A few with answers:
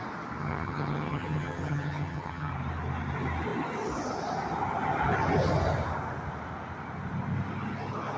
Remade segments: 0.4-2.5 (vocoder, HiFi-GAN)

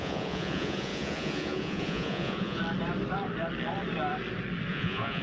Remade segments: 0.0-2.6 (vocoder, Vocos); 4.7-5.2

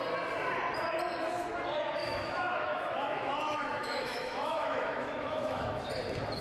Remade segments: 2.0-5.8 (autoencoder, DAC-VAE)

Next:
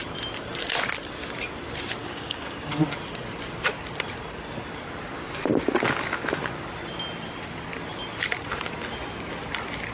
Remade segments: 2.0-2.7 (codec, DAC)

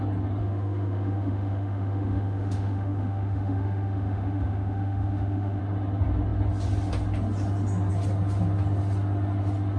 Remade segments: 0.4-5.6 (autoencoder, DAC-VAE)